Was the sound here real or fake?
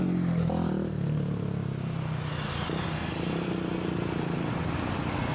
real